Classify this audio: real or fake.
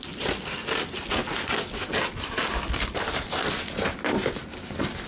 real